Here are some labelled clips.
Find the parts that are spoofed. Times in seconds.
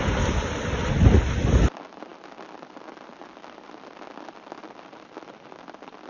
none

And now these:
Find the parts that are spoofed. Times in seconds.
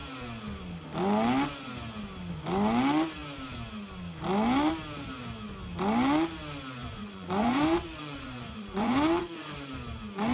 6.8-9.7 (vocoder, Vocos)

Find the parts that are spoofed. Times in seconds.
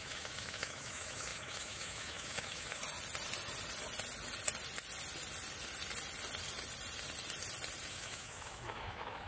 0.0-2.8 (autoencoder, DAC-VAE); 7.9-9.3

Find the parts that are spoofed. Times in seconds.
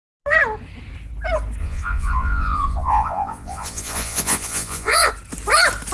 1.6-5.1 (vocoder, Vocos)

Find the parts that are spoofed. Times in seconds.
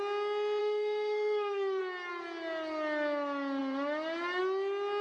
0.6-1.8 (codec, SNAC)